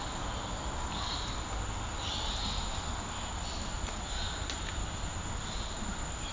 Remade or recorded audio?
recorded